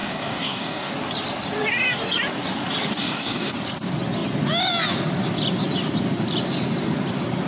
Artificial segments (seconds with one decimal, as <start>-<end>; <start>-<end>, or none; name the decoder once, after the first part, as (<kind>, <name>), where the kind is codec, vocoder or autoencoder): 0.0-0.9 (codec, DAC); 3.0-3.5